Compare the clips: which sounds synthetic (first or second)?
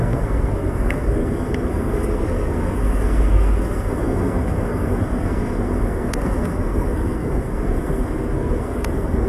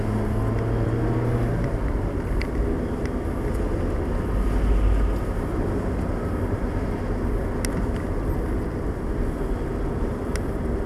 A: first